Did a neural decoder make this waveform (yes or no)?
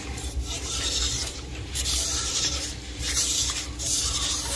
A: yes